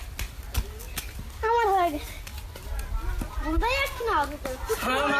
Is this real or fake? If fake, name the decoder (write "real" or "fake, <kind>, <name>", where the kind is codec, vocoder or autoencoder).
real